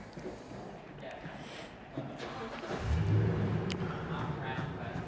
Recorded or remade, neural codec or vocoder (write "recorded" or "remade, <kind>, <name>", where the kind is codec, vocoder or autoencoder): recorded